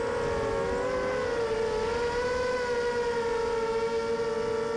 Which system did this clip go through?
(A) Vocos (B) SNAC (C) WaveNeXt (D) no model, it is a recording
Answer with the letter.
D